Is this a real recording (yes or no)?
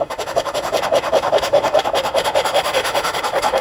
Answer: no